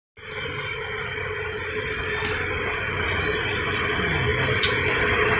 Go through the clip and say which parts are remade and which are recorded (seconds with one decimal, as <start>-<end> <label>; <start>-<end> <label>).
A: 0.0-5.4 recorded